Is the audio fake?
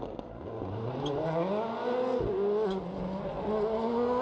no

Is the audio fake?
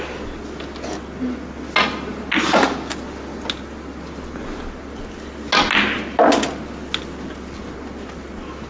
no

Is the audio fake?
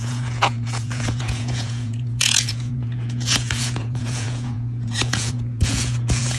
yes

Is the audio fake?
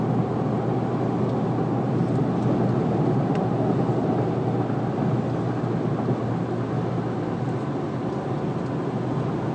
no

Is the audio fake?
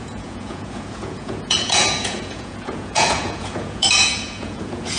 yes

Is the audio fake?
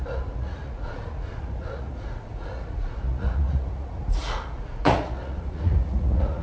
yes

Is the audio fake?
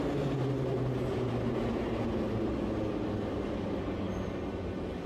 no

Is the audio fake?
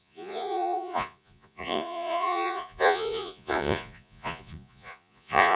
yes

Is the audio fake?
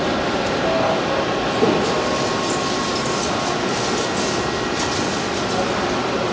no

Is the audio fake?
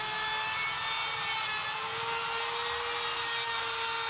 no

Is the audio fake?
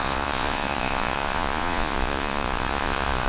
yes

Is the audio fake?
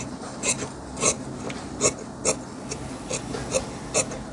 no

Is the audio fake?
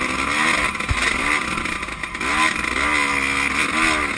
no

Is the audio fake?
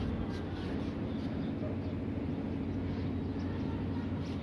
no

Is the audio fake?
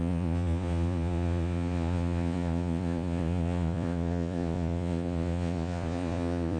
yes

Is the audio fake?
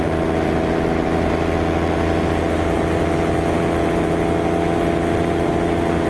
no